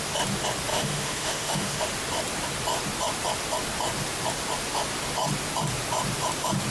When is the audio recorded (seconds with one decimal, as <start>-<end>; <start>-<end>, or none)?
0.0-0.7; 1.9-6.7